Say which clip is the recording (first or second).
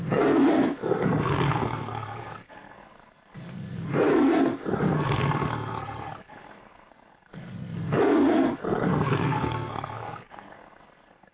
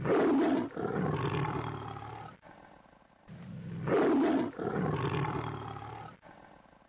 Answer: second